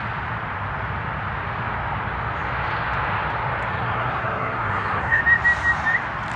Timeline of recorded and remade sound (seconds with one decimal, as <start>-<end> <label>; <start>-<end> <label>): 0.0-3.7 recorded; 3.7-5.2 remade; 5.2-6.4 recorded